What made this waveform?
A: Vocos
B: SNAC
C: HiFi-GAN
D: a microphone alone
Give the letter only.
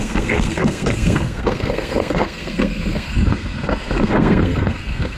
B